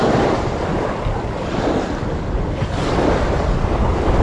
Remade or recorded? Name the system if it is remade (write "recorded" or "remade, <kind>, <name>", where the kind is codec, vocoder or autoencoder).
remade, vocoder, BigVGAN v2